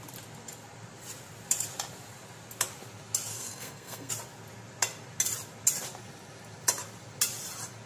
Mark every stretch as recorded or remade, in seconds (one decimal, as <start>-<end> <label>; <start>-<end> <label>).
0.0-3.3 recorded; 3.3-4.1 remade; 4.1-7.9 recorded